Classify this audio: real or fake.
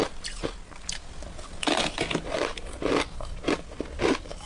real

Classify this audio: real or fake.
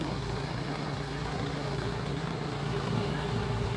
fake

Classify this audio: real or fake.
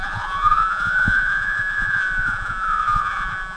fake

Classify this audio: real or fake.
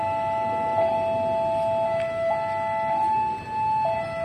real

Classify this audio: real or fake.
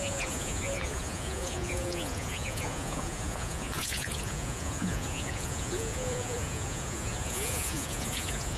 fake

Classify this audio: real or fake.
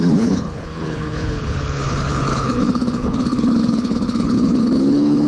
fake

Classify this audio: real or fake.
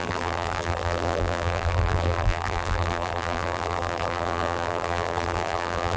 fake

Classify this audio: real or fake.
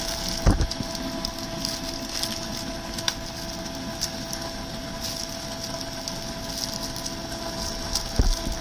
real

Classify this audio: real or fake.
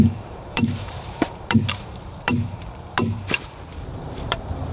fake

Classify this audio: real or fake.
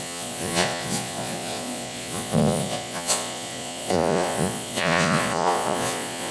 fake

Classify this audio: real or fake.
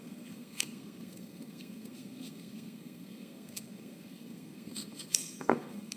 fake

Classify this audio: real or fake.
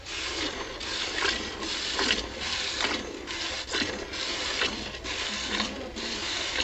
real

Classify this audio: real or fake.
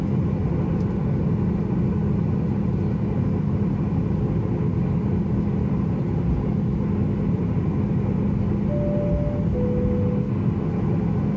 real